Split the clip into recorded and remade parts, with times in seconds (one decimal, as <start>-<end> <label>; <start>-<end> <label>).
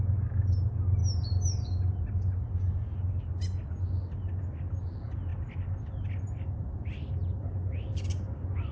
0.0-8.7 recorded